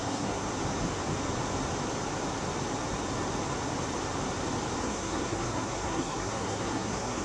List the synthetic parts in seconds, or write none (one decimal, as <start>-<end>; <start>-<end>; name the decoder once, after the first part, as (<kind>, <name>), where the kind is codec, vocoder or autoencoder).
0.0-0.5 (codec, SNAC); 4.8-7.2